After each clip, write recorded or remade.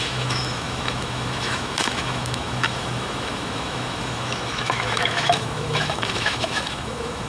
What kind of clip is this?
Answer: remade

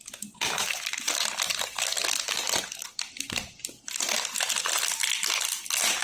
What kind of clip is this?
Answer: recorded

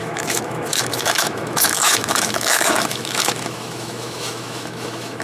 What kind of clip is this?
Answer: remade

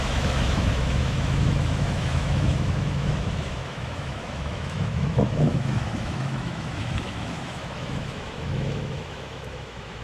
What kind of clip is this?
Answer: remade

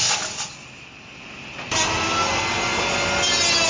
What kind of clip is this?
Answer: recorded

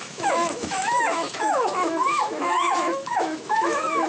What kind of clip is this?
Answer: remade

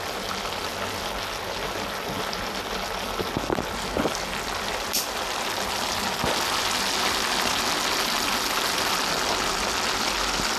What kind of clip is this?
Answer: recorded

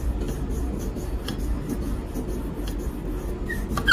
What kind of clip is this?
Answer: recorded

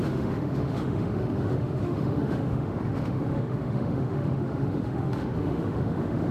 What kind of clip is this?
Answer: remade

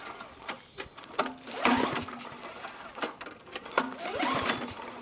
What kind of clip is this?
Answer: recorded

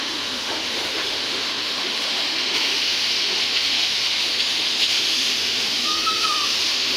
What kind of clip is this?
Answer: remade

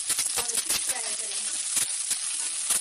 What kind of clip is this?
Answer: recorded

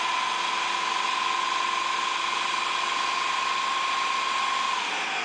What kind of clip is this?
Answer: recorded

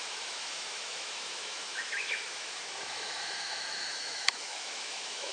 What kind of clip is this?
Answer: remade